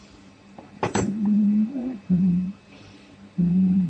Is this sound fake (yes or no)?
yes